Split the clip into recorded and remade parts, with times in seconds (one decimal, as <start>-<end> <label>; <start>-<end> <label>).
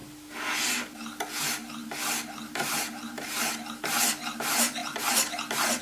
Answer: 0.0-5.8 recorded